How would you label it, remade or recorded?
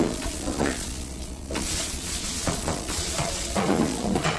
remade